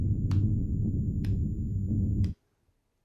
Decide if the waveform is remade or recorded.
recorded